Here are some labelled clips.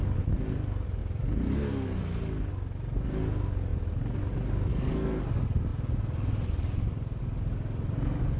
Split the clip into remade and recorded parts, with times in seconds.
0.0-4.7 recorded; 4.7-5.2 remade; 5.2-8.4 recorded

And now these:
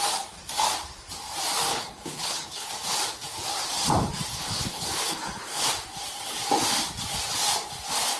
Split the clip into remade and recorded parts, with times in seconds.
0.0-1.7 recorded; 1.7-2.7 remade; 2.7-4.3 recorded; 4.3-5.7 remade; 5.7-8.2 recorded

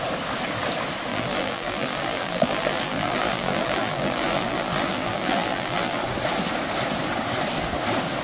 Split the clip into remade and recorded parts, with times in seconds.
0.0-1.1 recorded; 1.1-6.0 remade; 6.0-8.2 recorded

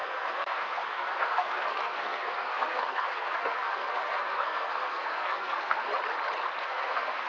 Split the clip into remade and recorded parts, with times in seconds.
0.0-5.9 remade; 5.9-6.6 recorded; 6.6-7.3 remade